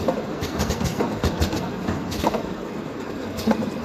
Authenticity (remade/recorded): remade